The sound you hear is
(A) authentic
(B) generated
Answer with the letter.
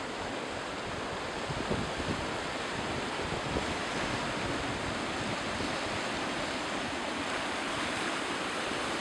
A